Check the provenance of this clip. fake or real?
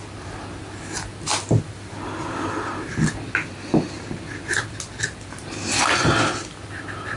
real